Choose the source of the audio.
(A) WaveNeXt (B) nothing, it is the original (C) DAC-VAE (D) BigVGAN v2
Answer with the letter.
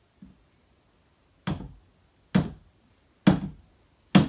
B